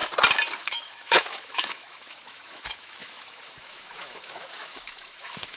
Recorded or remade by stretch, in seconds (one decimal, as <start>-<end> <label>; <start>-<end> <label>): 0.0-0.6 recorded; 0.6-5.6 remade